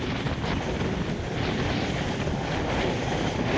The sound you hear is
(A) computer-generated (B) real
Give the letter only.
B